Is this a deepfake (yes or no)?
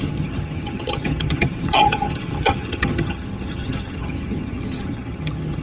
yes